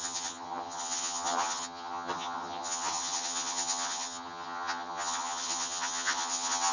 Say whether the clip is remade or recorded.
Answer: remade